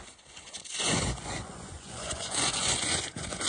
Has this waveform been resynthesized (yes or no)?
yes